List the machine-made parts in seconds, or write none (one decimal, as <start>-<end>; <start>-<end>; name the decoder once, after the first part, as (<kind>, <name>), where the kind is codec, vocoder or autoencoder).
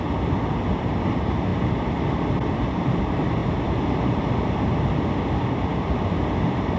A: none